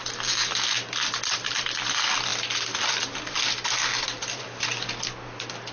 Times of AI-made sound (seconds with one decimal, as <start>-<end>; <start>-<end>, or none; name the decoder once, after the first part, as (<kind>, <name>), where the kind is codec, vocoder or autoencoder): 2.3-3.4 (vocoder, BigVGAN v2); 3.9-4.4

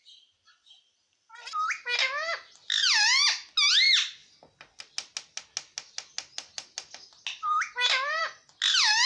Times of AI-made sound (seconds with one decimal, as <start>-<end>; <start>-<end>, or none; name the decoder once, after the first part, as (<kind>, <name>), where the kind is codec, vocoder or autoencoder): none

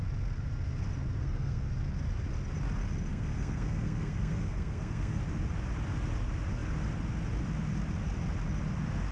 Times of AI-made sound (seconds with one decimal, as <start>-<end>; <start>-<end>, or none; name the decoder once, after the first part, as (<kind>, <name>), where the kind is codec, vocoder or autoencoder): 1.2-1.7 (codec, SNAC); 3.1-5.2